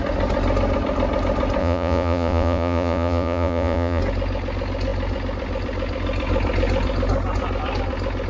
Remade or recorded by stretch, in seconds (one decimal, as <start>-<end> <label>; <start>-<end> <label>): 0.0-1.6 recorded; 1.6-4.0 remade; 4.0-8.3 recorded